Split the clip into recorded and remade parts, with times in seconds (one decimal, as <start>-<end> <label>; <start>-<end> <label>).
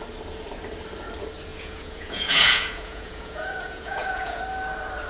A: 0.0-1.5 recorded; 1.5-4.4 remade; 4.4-5.1 recorded